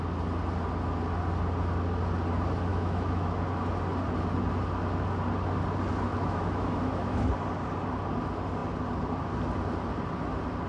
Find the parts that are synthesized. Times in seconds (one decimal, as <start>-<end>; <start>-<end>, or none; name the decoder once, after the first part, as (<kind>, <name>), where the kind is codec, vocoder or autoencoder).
2.7-3.3 (autoencoder, DAC-VAE); 6.1-7.3